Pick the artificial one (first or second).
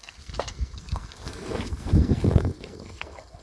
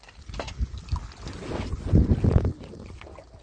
first